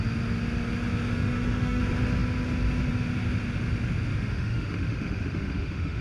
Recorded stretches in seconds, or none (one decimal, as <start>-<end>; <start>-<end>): 0.0-1.1; 1.8-4.1